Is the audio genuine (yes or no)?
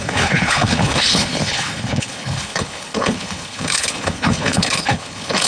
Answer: no